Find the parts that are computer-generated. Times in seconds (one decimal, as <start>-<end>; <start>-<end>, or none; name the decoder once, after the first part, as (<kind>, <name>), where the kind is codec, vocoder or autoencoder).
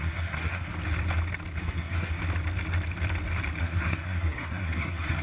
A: 0.0-0.7 (codec, SNAC); 1.6-2.2; 3.6-5.2